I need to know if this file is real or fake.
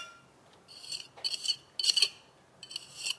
real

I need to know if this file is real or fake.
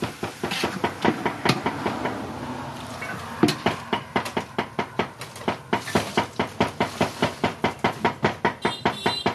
real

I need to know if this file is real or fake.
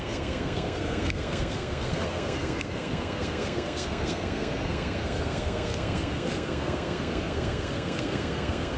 fake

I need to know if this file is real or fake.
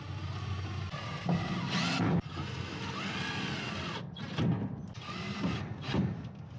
real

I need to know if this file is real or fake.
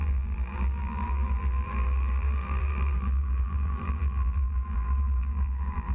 fake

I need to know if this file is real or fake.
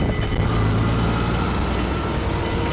real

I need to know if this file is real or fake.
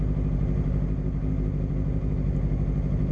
real